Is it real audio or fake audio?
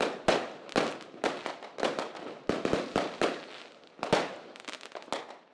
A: real